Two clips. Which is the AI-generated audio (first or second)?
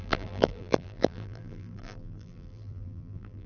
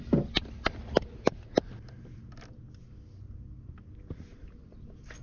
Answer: first